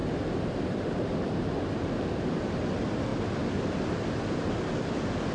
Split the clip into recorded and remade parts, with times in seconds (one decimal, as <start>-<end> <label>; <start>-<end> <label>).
0.0-2.2 remade; 2.2-5.3 recorded